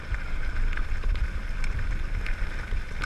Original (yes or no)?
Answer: yes